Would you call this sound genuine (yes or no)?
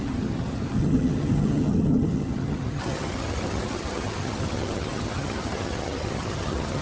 no